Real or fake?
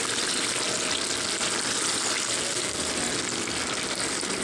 real